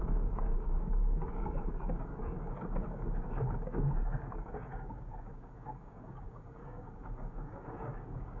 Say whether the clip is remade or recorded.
remade